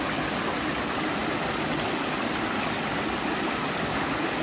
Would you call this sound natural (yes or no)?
yes